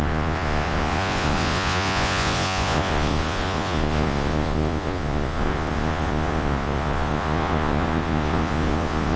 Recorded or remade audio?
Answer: remade